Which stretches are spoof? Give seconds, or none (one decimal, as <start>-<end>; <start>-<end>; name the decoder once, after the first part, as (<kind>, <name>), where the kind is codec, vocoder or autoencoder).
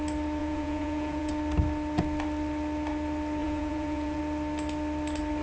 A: 0.4-1.3 (vocoder, Vocos); 3.4-4.2